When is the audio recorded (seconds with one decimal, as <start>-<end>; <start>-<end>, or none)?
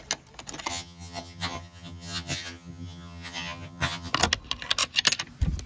0.0-0.7; 4.1-5.7